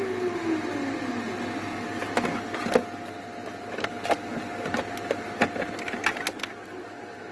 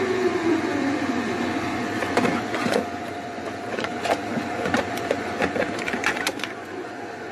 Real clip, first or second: first